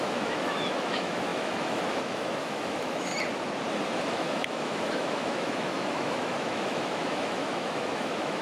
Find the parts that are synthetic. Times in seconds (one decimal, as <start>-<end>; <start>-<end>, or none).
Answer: 0.0-3.1; 4.0-8.4